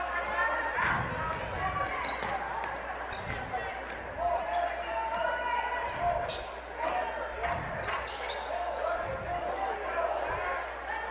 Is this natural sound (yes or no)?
yes